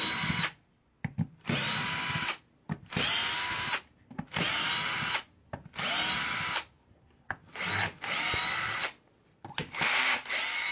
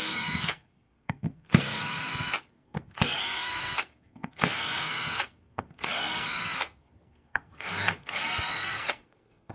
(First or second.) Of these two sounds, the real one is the first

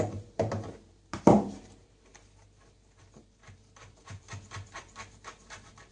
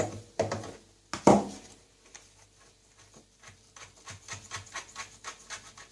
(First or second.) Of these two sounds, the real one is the second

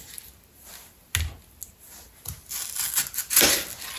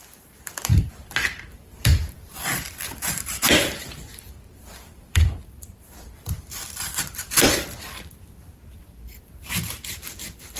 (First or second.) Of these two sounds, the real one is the first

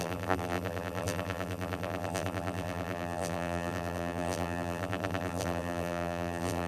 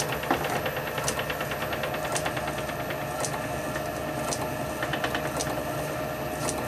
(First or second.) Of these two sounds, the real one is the second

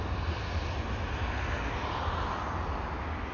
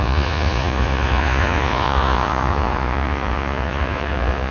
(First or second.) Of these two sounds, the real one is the first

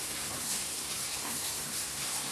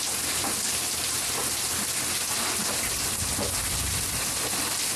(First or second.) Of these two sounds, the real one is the second